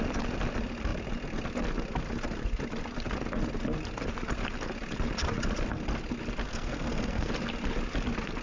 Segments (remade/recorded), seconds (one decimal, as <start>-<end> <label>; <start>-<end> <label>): 0.0-6.5 recorded; 6.5-7.3 remade; 7.3-8.4 recorded